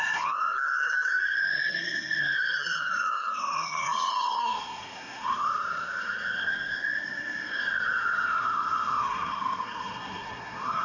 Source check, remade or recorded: remade